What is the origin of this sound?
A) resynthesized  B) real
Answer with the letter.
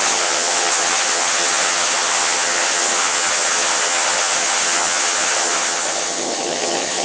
A